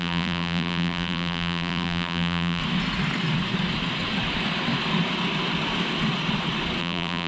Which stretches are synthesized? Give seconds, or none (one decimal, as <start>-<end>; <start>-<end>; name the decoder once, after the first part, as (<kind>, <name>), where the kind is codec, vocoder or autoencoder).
0.0-2.6 (vocoder, BigVGAN v2); 6.8-7.3